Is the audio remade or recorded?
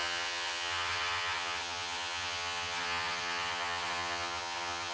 remade